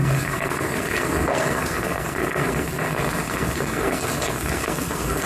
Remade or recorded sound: remade